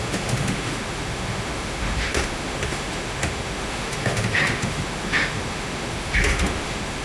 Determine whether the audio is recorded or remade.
remade